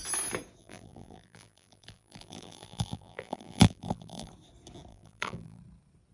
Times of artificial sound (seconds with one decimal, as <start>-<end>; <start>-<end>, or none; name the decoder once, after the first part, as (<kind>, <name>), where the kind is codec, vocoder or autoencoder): 0.6-4.3 (vocoder, BigVGAN v2); 4.9-5.6